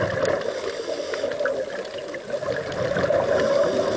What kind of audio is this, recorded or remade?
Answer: recorded